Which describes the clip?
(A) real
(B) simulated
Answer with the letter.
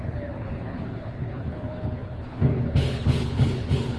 B